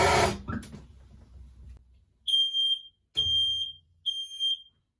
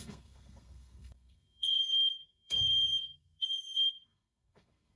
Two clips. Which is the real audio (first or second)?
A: first